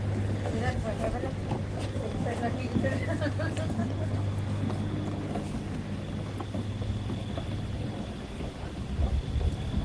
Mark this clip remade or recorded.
recorded